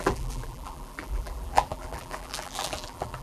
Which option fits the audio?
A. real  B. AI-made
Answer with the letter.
B